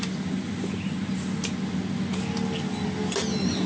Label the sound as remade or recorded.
recorded